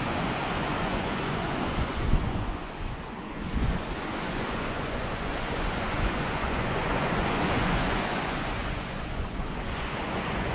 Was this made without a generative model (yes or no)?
no